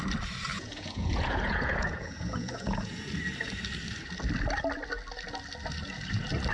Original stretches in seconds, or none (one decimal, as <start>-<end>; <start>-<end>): 0.0-0.5; 3.1-6.5